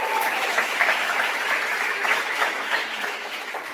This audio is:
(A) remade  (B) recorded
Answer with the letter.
A